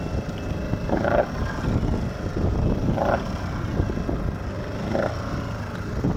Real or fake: real